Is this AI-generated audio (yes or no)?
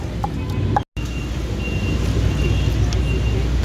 no